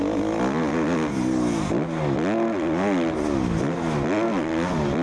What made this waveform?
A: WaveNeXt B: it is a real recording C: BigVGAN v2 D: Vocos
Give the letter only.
B